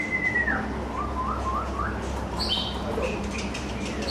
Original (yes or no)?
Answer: yes